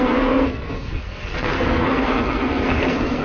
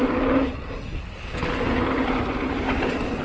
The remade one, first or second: first